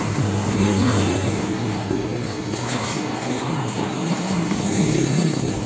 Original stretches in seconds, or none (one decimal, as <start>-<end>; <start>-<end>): none